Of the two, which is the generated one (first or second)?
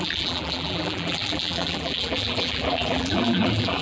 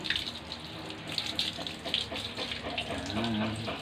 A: first